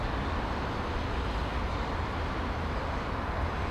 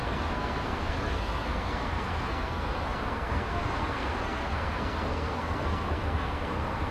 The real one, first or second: first